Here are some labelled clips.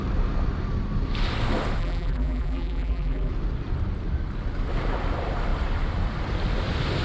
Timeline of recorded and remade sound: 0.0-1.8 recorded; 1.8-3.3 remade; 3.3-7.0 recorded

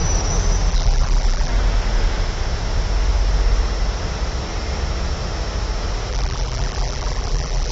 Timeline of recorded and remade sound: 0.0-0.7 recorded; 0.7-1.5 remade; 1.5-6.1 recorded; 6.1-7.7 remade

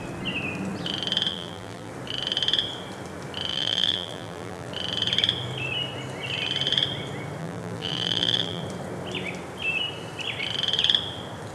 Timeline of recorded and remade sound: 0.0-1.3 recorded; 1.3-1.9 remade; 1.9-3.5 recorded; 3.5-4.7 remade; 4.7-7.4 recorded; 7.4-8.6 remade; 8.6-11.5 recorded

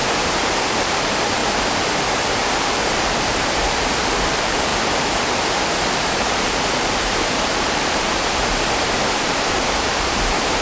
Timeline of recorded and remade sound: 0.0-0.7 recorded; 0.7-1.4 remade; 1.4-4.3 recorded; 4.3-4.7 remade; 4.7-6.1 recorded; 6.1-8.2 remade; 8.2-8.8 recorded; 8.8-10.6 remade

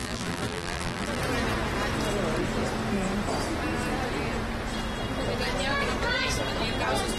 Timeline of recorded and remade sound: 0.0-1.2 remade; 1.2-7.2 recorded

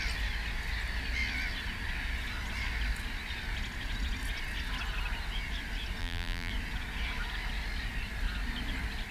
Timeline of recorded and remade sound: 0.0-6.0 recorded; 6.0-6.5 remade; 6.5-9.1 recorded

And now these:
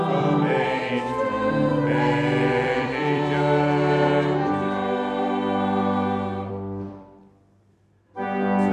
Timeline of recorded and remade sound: 0.0-7.2 remade; 7.2-8.7 recorded

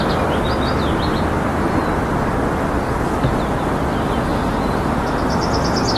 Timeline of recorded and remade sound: 0.0-4.3 recorded; 4.3-5.2 remade; 5.2-6.0 recorded